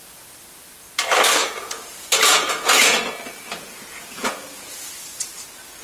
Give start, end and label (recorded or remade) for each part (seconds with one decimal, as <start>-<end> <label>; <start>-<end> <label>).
0.0-1.4 recorded; 1.4-4.9 remade; 4.9-5.8 recorded